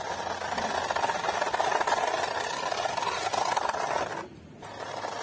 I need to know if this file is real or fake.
real